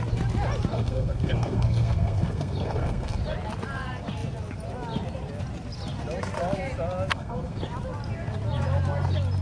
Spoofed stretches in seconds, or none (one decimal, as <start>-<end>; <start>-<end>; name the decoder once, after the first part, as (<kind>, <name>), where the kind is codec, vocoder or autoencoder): 0.7-3.2 (codec, SNAC); 7.1-7.6